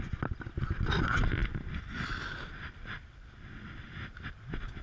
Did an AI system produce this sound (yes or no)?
no